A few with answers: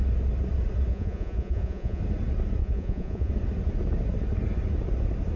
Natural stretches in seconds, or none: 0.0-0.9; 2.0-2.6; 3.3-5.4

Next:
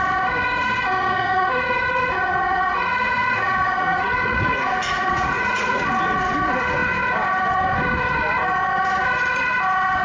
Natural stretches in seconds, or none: 0.0-1.0; 5.9-10.0